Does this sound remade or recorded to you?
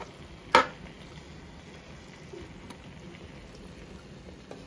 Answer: recorded